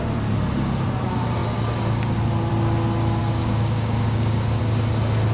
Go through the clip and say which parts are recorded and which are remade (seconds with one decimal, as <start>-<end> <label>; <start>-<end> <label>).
0.0-3.2 recorded; 3.2-4.6 remade; 4.6-5.3 recorded